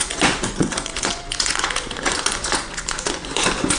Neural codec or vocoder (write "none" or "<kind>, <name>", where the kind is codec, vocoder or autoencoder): vocoder, Vocos